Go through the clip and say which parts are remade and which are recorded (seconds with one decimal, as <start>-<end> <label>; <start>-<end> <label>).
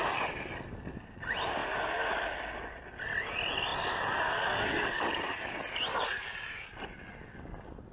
0.0-7.9 recorded